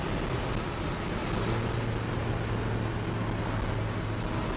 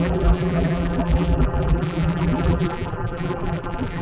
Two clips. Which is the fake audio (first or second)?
second